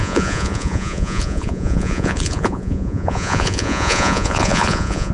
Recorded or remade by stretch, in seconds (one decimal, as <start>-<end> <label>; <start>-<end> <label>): 0.0-5.1 remade